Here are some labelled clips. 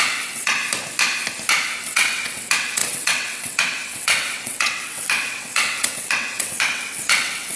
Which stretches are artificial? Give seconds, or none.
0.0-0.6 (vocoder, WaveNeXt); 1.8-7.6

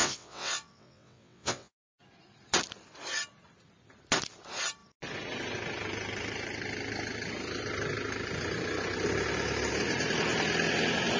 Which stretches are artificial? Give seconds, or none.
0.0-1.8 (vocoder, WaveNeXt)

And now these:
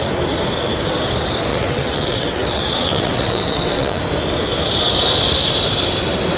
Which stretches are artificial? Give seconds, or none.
1.5-4.0 (vocoder, WaveNeXt)

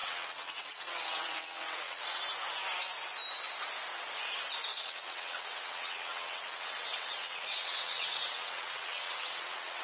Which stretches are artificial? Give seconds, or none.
0.0-2.2 (vocoder, WaveNeXt); 4.7-9.8

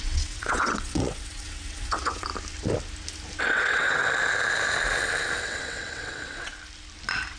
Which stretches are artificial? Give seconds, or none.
0.0-2.3 (vocoder, WaveNeXt); 3.4-4.0; 5.4-6.5